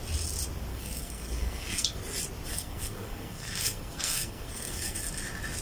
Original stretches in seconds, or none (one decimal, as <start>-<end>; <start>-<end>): 0.0-0.7; 2.0-2.5; 5.0-5.6